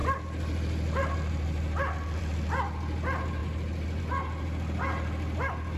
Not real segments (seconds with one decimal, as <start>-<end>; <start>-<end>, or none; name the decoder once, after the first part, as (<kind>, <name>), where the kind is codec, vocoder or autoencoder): none